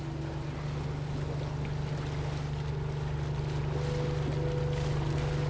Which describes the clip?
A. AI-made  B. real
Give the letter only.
B